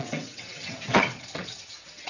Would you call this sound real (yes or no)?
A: no